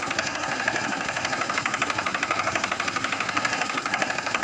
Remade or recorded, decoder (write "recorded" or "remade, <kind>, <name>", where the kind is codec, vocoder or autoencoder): remade, codec, SNAC